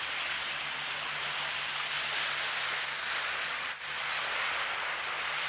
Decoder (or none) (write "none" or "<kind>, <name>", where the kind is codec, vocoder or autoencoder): none